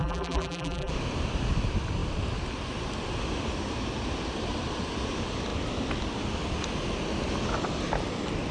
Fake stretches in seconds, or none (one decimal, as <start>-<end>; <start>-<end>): 0.0-0.9